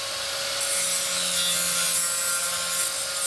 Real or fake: real